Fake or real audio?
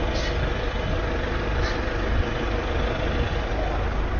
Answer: real